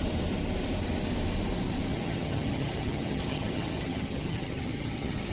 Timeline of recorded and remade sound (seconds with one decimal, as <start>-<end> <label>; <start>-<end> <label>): 0.0-1.9 recorded; 1.9-5.3 remade